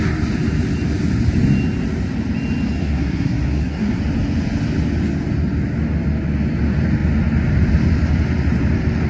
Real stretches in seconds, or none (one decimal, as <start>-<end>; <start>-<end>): 0.0-2.8; 4.0-9.1